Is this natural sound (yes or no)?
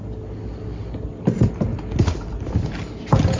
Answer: yes